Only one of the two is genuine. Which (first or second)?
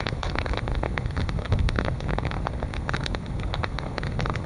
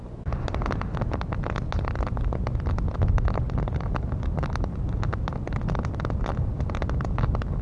second